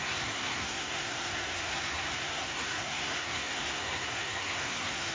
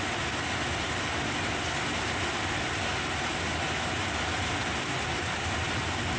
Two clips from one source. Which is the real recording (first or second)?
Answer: second